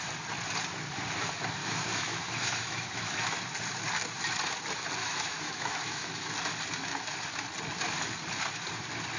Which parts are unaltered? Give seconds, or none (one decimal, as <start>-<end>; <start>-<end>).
0.0-1.6; 3.4-5.0; 6.3-9.2